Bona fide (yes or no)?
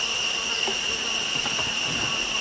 yes